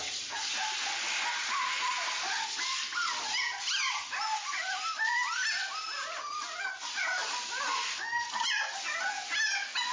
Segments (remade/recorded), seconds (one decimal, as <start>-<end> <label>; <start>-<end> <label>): 0.0-9.9 recorded